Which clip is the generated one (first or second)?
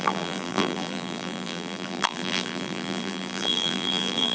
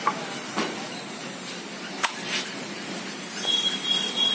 first